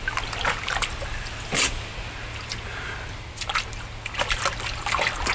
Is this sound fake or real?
real